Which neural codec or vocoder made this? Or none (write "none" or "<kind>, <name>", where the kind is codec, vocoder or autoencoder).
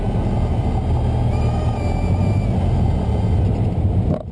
none